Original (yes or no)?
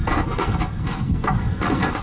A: no